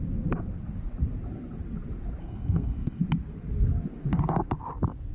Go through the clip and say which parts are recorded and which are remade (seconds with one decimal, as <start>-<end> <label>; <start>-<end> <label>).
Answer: 0.0-2.2 recorded; 2.2-3.0 remade; 3.0-5.1 recorded